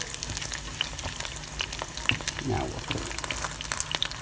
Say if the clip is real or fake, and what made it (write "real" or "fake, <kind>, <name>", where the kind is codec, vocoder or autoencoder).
real